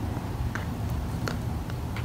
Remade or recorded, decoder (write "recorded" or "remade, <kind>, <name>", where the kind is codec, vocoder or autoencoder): remade, vocoder, BigVGAN v2